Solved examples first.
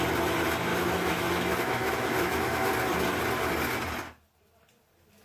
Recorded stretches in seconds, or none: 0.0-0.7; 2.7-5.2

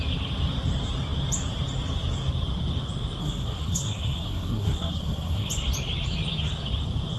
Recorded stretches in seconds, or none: 0.0-3.2; 5.5-7.2

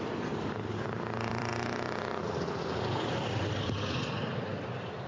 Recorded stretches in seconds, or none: none

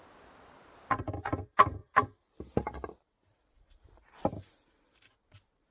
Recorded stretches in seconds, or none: 0.0-5.7